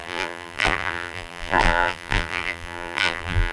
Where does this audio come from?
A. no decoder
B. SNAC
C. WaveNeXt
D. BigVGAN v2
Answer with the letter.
D